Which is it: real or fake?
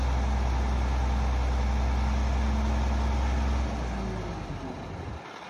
real